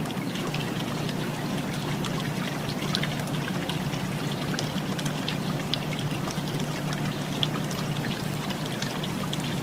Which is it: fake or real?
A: real